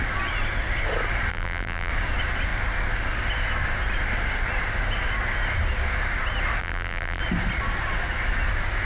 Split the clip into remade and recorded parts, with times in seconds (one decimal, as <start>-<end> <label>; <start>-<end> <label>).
0.0-1.3 recorded; 1.3-1.9 remade; 1.9-6.6 recorded; 6.6-7.2 remade; 7.2-8.9 recorded